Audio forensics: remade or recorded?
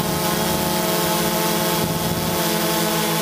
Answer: recorded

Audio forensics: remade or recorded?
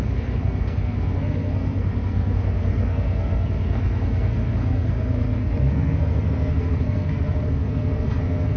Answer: remade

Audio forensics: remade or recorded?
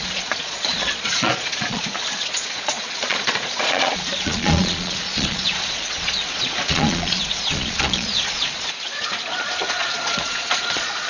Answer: remade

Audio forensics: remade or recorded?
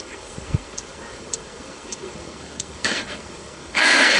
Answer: remade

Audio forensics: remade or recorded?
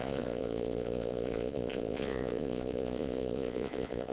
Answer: remade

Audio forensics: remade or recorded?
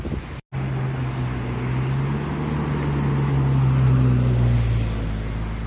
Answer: recorded